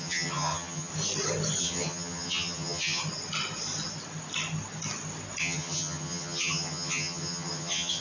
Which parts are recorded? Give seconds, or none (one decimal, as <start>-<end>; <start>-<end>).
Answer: 0.9-1.6; 3.0-5.4